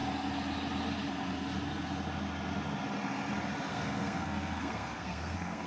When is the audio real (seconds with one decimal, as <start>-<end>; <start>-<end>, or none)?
0.0-3.7